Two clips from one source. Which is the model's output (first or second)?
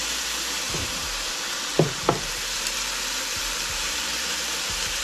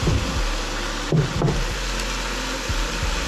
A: first